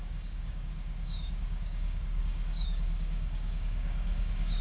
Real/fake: fake